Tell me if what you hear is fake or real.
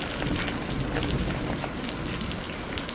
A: real